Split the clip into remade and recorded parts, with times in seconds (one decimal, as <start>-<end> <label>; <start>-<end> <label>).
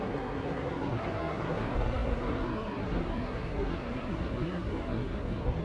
0.0-5.6 remade